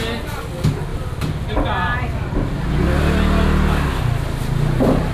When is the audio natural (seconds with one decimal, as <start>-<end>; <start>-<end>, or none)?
0.0-5.1